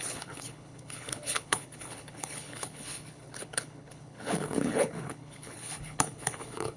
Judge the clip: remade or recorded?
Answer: remade